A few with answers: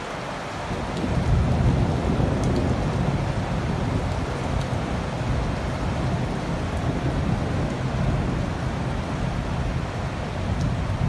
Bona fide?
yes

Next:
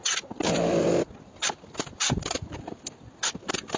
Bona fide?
yes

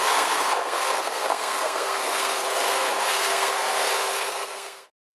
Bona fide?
no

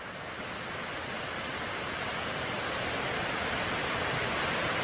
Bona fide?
yes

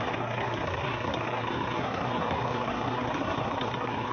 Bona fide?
no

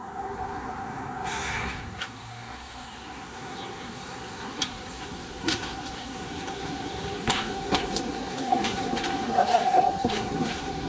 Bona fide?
no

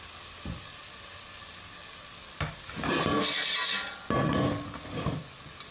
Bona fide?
yes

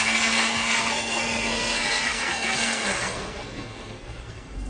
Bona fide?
no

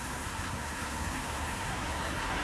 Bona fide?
no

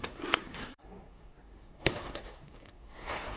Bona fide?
no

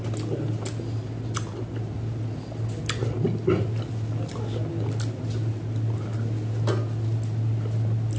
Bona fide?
yes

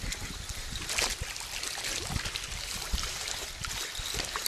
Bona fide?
yes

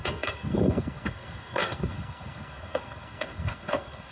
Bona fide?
no